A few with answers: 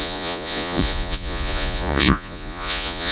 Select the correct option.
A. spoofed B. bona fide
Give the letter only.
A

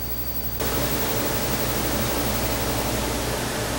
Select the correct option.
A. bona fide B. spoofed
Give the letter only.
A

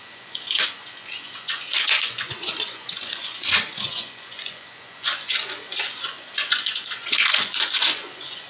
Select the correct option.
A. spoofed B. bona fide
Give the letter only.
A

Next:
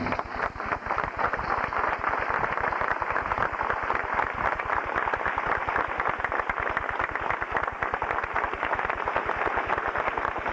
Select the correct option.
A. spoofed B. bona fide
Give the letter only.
B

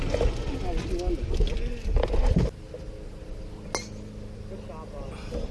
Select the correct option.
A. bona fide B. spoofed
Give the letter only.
A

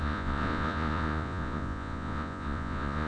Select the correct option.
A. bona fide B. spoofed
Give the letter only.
B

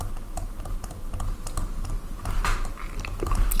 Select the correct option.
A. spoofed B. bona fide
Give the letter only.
B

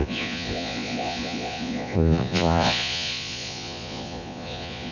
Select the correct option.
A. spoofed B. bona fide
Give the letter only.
A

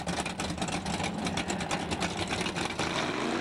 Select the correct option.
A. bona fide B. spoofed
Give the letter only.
A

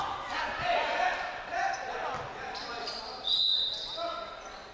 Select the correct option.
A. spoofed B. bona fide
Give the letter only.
B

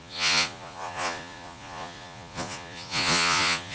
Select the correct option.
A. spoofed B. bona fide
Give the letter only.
A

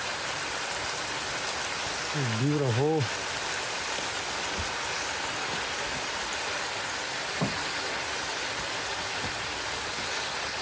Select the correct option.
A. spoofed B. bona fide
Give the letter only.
B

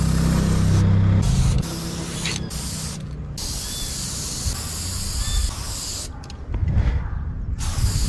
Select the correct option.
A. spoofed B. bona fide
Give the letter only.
B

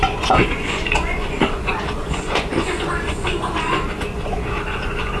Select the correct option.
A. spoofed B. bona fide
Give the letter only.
A